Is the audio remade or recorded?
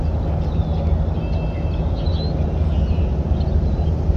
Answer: recorded